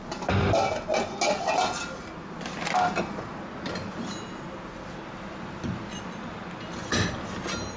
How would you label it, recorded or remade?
recorded